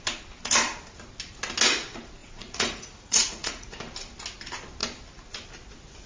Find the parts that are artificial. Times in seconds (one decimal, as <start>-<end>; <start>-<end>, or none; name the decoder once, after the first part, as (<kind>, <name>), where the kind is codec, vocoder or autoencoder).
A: 2.2-3.7 (vocoder, Vocos)